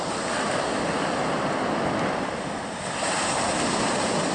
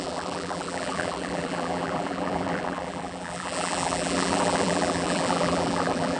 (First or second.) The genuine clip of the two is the first